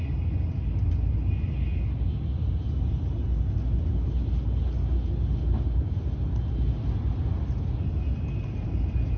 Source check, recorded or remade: recorded